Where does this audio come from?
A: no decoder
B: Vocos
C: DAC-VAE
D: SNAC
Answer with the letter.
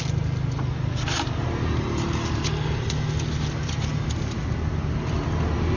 A